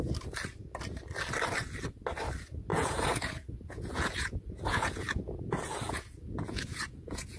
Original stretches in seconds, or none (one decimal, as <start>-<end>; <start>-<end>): 0.0-2.7